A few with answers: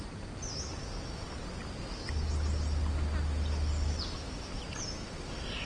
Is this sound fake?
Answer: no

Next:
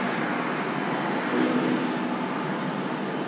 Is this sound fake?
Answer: no